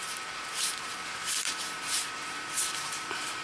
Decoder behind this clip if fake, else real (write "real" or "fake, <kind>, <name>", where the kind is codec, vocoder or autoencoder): fake, vocoder, BigVGAN v2